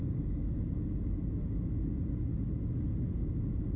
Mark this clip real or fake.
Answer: real